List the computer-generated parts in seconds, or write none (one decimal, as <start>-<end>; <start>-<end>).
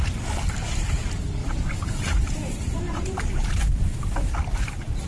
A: 1.4-4.1